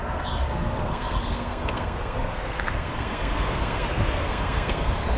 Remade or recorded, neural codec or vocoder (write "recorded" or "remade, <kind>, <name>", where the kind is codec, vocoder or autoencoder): remade, codec, SNAC